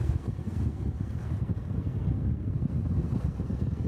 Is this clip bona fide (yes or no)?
no